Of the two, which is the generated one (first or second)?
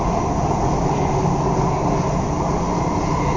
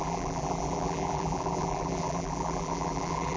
second